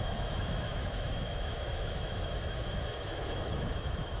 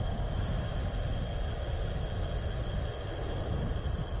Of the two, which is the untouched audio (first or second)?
second